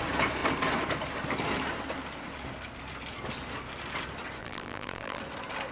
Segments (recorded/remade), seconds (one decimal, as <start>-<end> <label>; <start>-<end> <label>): 0.0-4.4 recorded; 4.4-5.2 remade; 5.2-5.7 recorded